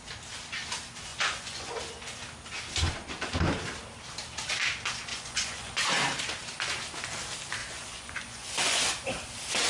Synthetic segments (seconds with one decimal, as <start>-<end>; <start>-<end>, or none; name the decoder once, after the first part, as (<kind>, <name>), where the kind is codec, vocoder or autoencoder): 1.1-1.8 (vocoder, Vocos); 5.1-5.9; 7.6-8.8